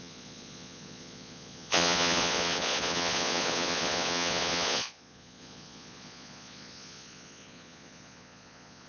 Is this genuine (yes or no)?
no